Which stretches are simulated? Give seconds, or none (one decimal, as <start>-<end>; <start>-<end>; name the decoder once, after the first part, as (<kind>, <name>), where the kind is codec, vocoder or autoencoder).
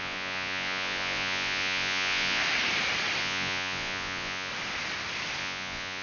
0.0-2.4 (vocoder, Vocos); 3.2-4.5; 5.4-6.0